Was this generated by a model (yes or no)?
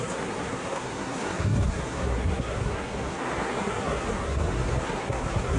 yes